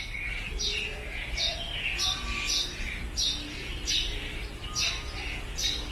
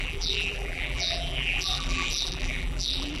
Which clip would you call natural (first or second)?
first